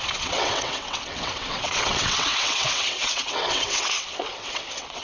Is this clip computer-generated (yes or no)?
yes